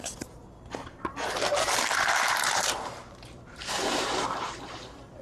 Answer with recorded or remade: remade